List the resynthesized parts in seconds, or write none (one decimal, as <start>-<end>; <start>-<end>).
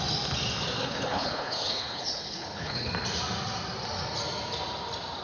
0.8-2.9